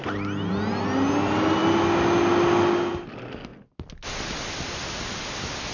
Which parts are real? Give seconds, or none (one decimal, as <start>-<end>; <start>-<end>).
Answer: 0.0-5.7